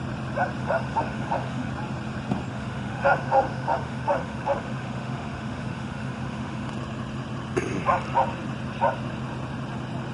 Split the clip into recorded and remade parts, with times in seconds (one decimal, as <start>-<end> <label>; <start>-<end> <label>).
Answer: 0.0-0.6 recorded; 0.6-1.7 remade; 1.7-2.5 recorded; 2.5-6.7 remade; 6.7-10.1 recorded